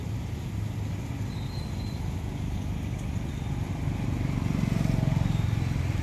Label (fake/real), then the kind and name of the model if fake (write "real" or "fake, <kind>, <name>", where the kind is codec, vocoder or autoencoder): real